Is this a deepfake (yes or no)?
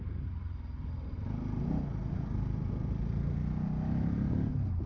no